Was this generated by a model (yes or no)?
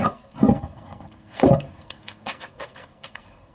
yes